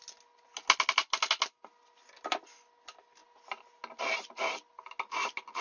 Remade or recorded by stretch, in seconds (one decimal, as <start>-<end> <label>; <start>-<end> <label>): 0.0-5.6 recorded